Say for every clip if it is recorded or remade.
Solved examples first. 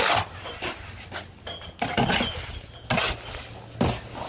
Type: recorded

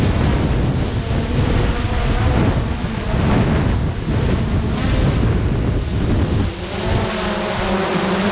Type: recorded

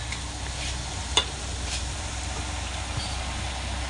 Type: recorded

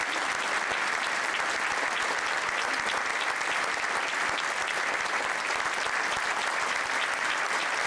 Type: recorded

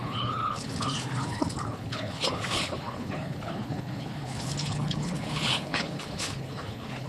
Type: remade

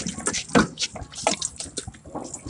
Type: recorded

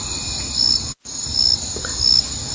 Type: recorded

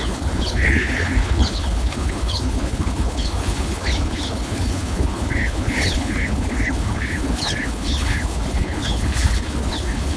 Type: remade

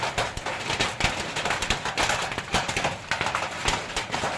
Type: recorded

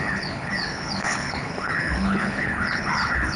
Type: remade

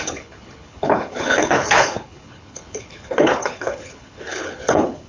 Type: remade